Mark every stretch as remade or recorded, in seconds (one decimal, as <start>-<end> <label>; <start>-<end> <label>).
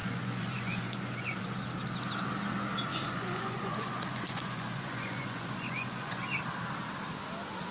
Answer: 0.0-1.4 remade; 1.4-2.9 recorded; 2.9-6.4 remade; 6.4-7.7 recorded